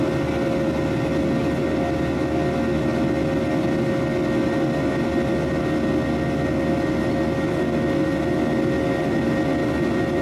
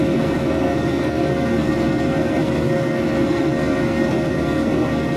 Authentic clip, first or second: first